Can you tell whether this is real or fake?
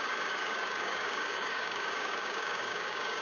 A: fake